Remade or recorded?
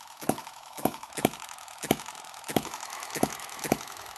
remade